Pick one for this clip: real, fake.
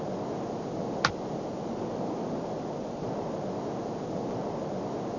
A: real